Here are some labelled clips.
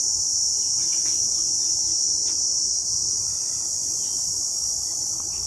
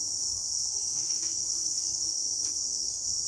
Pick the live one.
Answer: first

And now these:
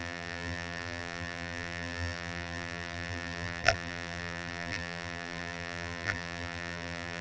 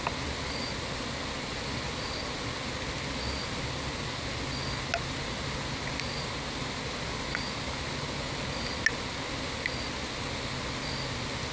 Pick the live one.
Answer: second